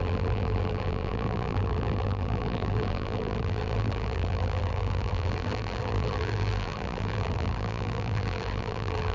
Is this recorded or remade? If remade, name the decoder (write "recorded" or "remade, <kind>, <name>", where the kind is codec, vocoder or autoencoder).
remade, vocoder, BigVGAN v2